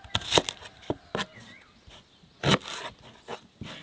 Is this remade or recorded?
recorded